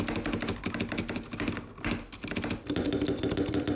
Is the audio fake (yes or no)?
no